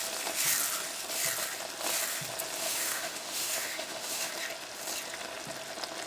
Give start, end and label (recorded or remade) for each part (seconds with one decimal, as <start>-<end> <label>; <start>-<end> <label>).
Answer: 0.0-2.6 recorded; 2.6-4.3 remade; 4.3-6.1 recorded